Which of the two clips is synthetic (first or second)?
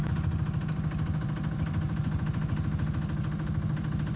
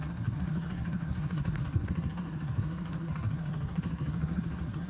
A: second